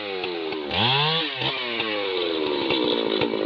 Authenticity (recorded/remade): recorded